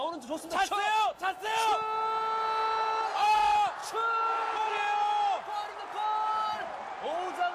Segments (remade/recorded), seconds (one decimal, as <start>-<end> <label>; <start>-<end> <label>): 0.0-7.5 recorded